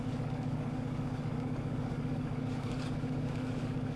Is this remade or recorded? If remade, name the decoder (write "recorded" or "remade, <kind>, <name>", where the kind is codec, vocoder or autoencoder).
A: remade, codec, DAC